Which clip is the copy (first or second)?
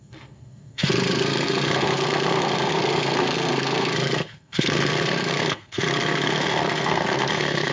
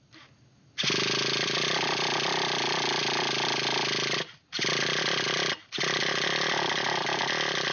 first